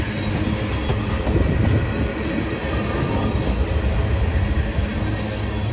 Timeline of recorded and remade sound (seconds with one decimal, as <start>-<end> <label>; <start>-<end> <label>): 0.0-5.7 recorded